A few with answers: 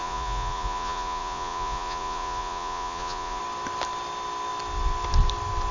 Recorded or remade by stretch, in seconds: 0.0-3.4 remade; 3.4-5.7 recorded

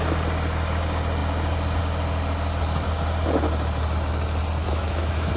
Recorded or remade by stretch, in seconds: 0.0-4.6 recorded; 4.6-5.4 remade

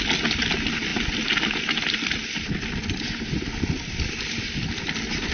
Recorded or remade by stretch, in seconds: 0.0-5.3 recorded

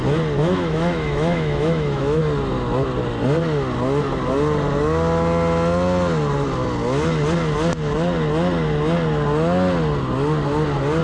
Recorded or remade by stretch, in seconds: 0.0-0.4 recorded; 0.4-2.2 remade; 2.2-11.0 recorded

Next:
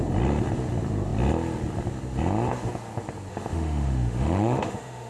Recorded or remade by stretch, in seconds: 0.0-3.3 recorded; 3.3-5.1 remade

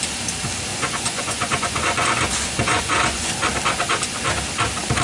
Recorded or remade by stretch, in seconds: 0.0-0.7 recorded; 0.7-3.3 remade; 3.3-5.0 recorded

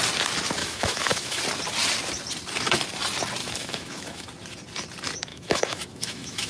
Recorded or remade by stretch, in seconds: 0.0-0.6 recorded; 0.6-1.4 remade; 1.4-3.4 recorded; 3.4-4.3 remade; 4.3-5.3 recorded; 5.3-6.5 remade

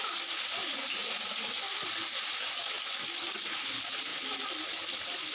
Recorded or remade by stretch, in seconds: 0.0-5.3 recorded